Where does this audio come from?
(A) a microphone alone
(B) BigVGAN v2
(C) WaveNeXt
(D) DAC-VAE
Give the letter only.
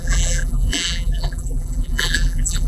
B